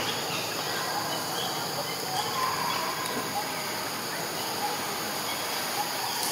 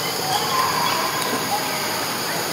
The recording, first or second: first